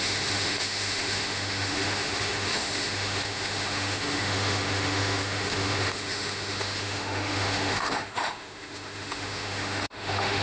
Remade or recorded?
remade